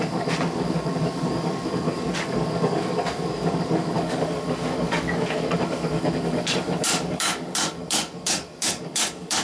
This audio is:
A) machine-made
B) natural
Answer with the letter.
A